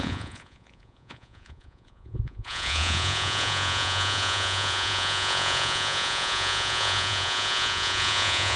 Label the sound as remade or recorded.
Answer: remade